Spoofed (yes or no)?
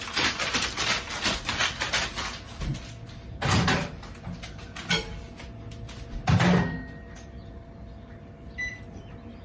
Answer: no